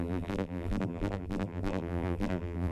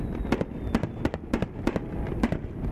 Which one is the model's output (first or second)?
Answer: first